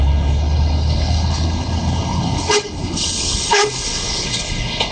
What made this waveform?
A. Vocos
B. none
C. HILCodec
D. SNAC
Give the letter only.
C